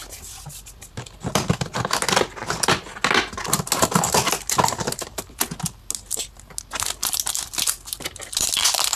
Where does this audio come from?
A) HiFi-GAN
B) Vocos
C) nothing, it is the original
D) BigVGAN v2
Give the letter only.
C